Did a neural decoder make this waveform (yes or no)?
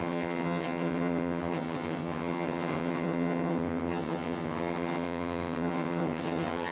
yes